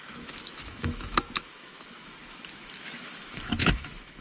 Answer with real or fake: fake